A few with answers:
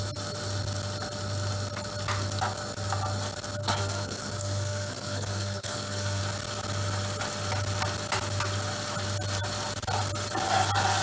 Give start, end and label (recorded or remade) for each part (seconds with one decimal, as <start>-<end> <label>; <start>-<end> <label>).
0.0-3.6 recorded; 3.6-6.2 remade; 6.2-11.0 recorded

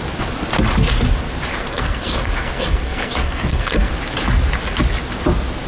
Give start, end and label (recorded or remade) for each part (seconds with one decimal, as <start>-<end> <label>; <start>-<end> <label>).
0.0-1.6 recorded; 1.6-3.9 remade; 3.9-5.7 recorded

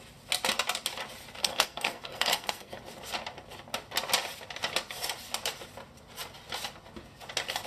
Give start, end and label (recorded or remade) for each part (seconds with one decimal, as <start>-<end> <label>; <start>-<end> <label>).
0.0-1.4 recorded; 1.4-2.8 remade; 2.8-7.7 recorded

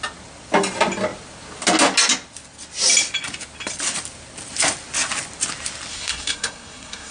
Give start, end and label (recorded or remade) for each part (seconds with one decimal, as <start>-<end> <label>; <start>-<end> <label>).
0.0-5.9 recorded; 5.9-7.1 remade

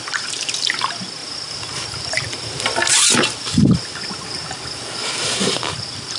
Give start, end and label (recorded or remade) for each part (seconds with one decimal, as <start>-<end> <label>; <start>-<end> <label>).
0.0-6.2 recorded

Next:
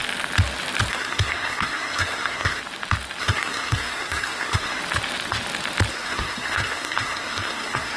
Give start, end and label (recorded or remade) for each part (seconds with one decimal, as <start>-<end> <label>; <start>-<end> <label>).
0.0-0.9 recorded; 0.9-2.6 remade; 2.6-3.2 recorded; 3.2-4.8 remade; 4.8-5.9 recorded; 5.9-8.0 remade